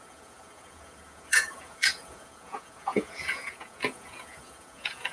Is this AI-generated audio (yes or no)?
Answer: yes